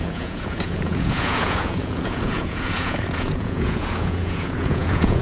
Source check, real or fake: fake